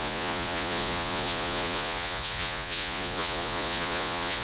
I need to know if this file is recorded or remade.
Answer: remade